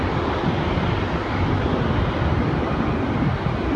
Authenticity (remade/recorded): recorded